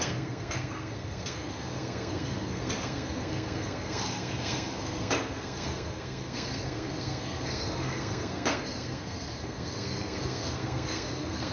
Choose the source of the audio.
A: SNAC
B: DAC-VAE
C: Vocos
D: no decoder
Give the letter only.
A